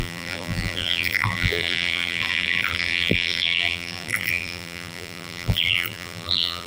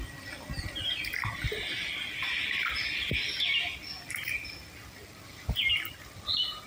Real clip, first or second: second